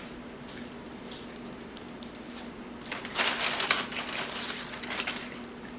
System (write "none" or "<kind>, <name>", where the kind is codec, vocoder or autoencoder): vocoder, BigVGAN v2